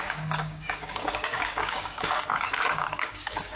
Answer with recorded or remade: remade